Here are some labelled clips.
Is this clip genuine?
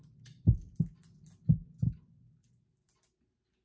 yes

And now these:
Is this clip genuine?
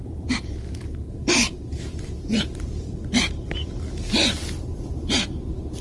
no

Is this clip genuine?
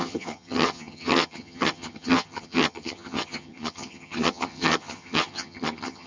no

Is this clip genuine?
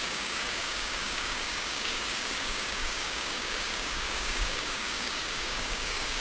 no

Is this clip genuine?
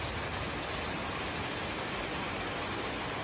yes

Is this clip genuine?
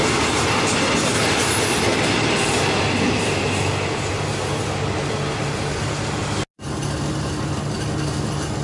yes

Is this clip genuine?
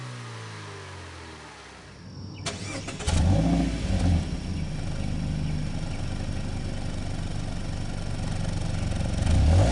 yes